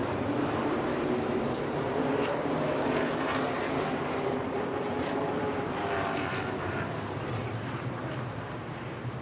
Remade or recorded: remade